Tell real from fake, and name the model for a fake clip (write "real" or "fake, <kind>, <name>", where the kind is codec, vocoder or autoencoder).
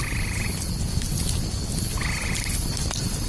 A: real